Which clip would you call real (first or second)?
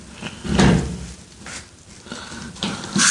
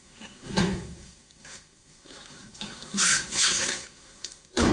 first